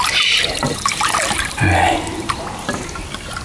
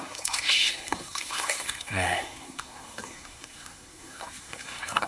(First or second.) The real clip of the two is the first